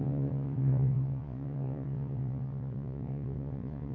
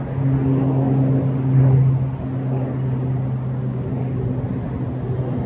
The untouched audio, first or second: second